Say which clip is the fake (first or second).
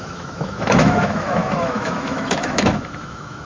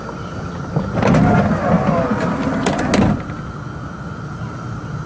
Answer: first